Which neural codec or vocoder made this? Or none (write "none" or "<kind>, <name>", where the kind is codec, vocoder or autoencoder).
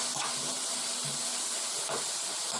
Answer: none